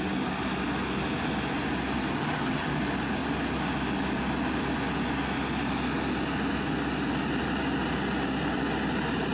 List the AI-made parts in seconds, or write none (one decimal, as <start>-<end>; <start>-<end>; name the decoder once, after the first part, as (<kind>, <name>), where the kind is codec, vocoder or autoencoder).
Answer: 2.1-2.7 (vocoder, HiFi-GAN)